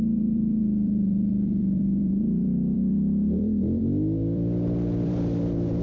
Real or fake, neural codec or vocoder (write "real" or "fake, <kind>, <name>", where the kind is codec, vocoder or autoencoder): fake, vocoder, BigVGAN v2